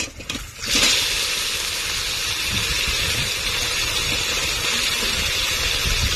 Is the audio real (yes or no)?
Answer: yes